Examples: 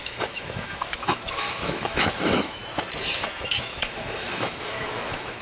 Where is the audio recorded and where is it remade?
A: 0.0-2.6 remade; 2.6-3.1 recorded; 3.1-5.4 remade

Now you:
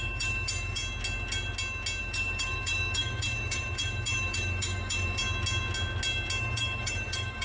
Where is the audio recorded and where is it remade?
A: 0.0-0.8 remade; 0.8-2.0 recorded; 2.0-5.2 remade; 5.2-6.4 recorded; 6.4-7.4 remade

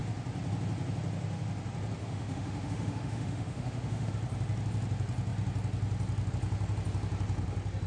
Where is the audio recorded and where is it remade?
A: 0.0-2.0 recorded; 2.0-4.1 remade; 4.1-7.9 recorded